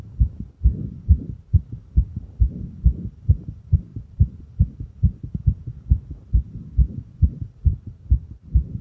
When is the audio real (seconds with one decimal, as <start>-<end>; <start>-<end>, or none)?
0.0-1.1; 1.7-3.9; 4.4-7.7